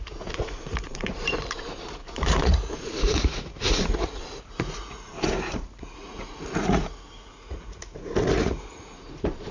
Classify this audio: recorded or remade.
remade